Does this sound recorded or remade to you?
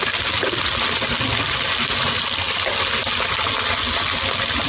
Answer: recorded